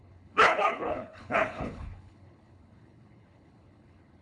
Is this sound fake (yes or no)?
yes